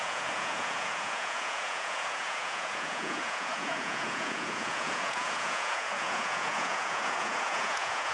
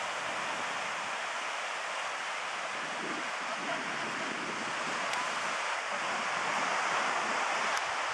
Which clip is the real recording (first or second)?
second